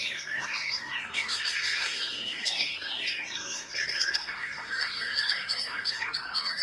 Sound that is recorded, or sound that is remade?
remade